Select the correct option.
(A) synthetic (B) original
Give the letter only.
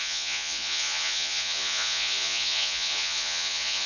A